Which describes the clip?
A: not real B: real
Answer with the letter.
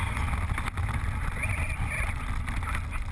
B